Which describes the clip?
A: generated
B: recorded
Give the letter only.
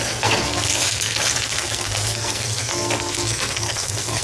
A